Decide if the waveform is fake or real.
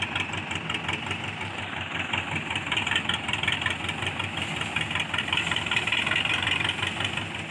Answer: real